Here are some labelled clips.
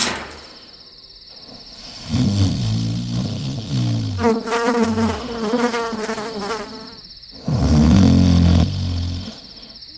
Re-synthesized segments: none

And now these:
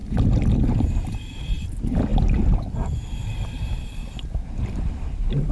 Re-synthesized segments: none

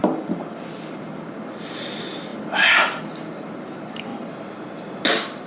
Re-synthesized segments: 0.0-1.1 (vocoder, BigVGAN v2); 2.3-3.0

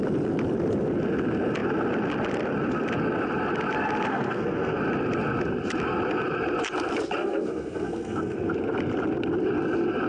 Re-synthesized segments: 4.1-4.8 (codec, SNAC); 7.2-8.5

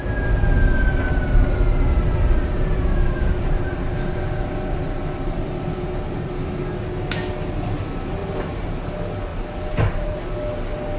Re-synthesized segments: 1.7-6.6 (vocoder, BigVGAN v2); 8.2-8.9; 9.3-10.2

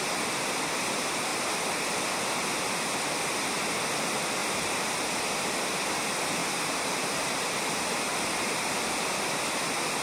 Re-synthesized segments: 1.3-1.9 (vocoder, BigVGAN v2); 4.4-4.9; 6.4-7.4; 8.1-9.1

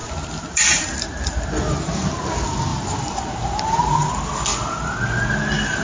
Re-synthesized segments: none